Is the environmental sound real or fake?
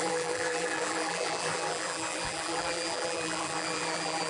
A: fake